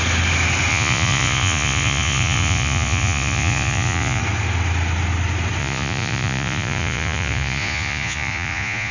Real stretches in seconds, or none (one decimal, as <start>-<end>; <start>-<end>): 0.0-0.7; 4.2-5.6